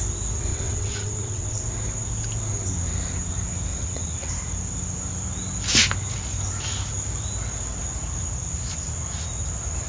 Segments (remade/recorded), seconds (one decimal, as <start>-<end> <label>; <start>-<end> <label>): 0.0-0.5 recorded; 0.5-1.6 remade; 1.6-3.7 recorded; 3.7-4.3 remade; 4.3-9.9 recorded